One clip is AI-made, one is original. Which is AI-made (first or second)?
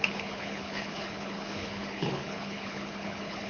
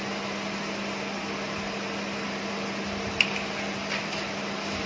first